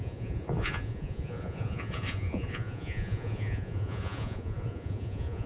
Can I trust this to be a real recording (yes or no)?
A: no